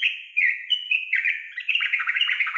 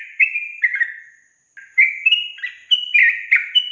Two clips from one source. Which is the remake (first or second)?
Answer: first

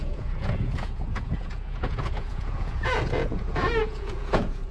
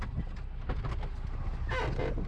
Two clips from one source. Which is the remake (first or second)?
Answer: first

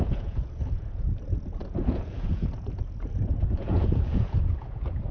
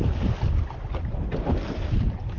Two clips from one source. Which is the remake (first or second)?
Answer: first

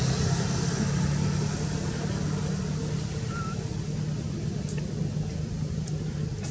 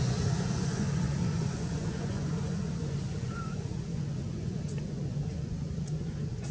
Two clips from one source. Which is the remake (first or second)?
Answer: second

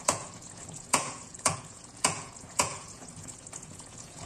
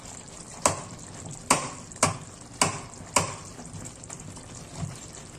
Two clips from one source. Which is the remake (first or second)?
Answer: first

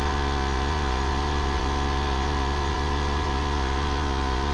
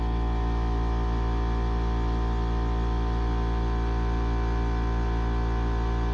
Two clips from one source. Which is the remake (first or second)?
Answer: first